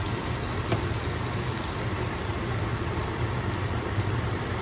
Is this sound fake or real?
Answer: fake